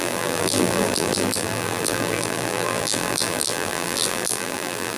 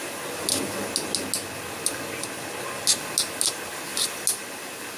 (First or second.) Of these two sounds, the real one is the second